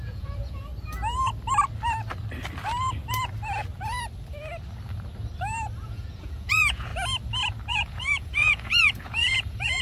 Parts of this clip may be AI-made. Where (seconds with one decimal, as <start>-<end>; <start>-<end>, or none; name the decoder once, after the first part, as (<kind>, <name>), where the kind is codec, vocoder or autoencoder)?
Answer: 0.0-0.7 (vocoder, Vocos); 5.8-6.9; 7.7-9.8